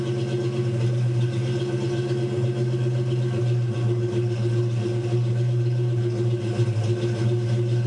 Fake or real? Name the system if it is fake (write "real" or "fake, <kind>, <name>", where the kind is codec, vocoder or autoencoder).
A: real